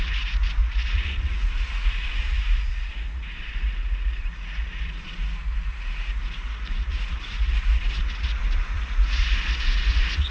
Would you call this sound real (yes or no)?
no